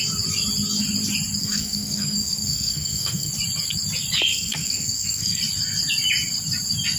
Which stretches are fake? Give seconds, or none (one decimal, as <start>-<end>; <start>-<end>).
1.4-3.3; 4.3-5.4